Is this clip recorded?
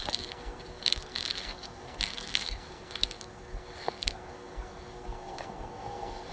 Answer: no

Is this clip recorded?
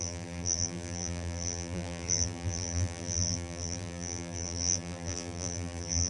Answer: no